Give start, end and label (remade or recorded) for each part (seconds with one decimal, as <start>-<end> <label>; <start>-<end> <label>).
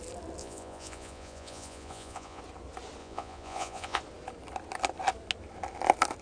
0.0-0.4 recorded; 0.4-2.4 remade; 2.4-3.0 recorded; 3.0-4.0 remade; 4.0-6.2 recorded